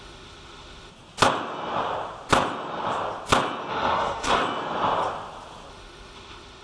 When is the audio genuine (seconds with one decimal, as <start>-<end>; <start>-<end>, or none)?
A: 0.9-3.7; 4.4-5.7